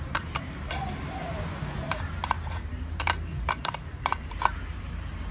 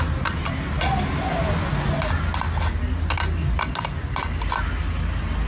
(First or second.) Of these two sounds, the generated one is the first